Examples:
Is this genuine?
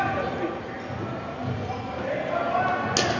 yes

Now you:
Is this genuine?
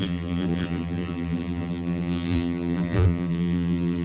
no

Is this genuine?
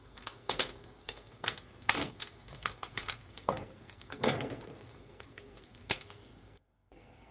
no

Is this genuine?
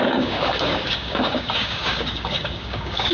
no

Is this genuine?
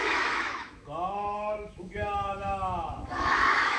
no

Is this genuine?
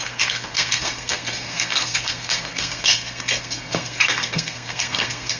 no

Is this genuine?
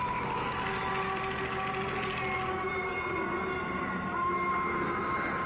yes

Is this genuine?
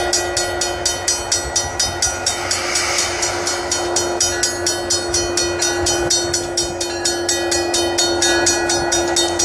yes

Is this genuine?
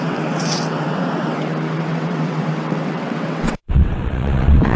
no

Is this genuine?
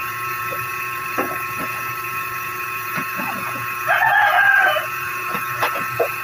no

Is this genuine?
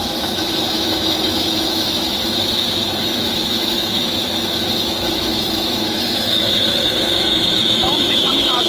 no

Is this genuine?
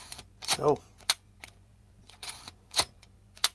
no